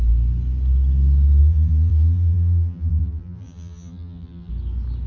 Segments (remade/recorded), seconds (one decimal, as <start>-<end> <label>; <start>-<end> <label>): 0.0-1.4 recorded; 1.4-4.5 remade; 4.5-5.1 recorded

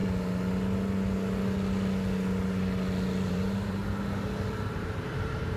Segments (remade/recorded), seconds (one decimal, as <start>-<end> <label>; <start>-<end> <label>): 0.0-3.3 recorded; 3.3-3.8 remade; 3.8-4.5 recorded; 4.5-5.6 remade

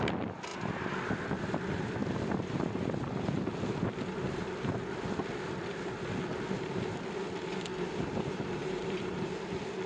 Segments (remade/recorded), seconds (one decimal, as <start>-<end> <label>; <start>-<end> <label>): 0.0-7.7 recorded; 7.7-9.3 remade; 9.3-9.9 recorded

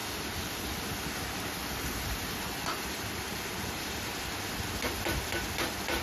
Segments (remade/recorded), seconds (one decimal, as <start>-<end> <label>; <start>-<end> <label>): 0.0-2.7 recorded; 2.7-4.3 remade; 4.3-6.0 recorded

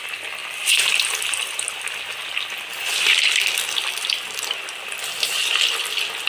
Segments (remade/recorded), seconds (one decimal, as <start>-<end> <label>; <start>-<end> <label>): 0.0-6.3 recorded

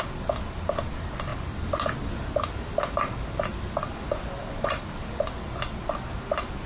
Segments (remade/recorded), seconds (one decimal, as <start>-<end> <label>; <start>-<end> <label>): 0.0-1.3 recorded; 1.3-5.3 remade; 5.3-6.7 recorded

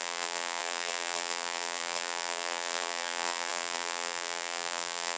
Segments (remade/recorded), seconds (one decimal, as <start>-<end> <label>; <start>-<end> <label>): 0.0-5.2 remade

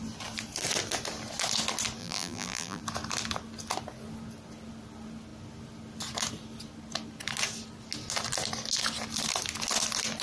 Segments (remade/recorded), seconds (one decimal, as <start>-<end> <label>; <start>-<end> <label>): 0.0-2.0 recorded; 2.0-2.8 remade; 2.8-10.2 recorded